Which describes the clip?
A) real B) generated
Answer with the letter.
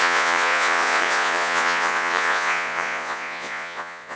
B